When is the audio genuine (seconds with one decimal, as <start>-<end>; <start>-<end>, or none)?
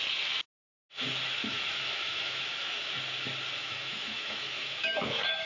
0.0-1.4; 2.9-3.6